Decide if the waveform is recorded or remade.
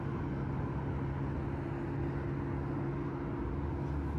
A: recorded